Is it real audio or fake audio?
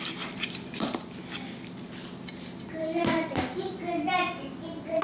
real